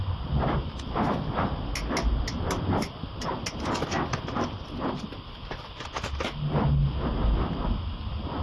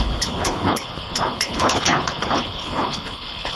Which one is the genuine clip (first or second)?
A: first